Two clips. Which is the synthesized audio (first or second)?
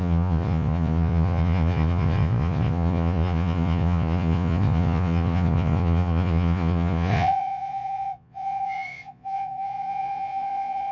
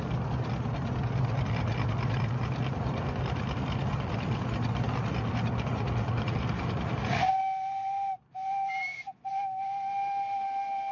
first